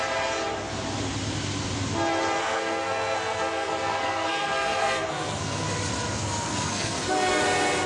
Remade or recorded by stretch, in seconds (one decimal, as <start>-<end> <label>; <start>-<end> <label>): 0.0-2.4 recorded; 2.4-5.7 remade; 5.7-6.2 recorded; 6.2-7.4 remade; 7.4-7.9 recorded